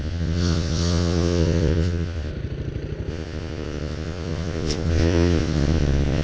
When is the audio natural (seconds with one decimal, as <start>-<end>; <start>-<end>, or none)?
2.3-3.1